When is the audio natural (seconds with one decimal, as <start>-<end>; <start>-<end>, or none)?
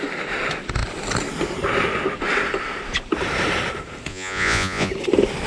0.0-4.1; 4.9-5.5